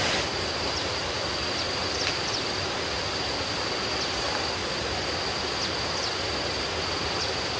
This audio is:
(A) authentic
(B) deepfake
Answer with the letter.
A